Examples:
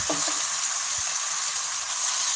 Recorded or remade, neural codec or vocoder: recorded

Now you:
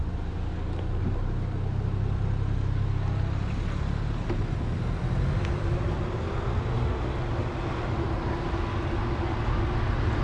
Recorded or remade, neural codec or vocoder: recorded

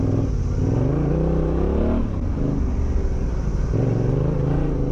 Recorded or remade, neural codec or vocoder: recorded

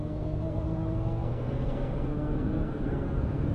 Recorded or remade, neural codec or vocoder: remade, codec, SNAC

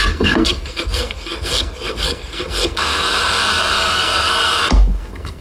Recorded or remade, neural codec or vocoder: remade, codec, SNAC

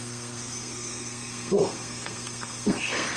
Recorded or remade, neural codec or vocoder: remade, codec, SNAC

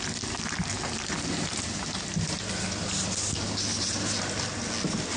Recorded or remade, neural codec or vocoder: recorded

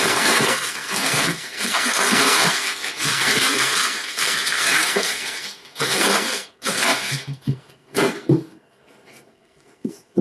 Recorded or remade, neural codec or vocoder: remade, codec, SNAC